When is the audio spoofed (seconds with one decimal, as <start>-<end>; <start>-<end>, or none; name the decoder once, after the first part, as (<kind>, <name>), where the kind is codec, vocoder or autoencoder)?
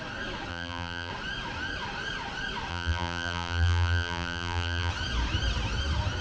0.5-1.1 (vocoder, BigVGAN v2); 2.7-4.9